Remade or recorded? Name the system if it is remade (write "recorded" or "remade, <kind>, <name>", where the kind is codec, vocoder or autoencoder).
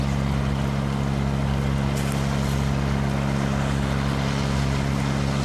recorded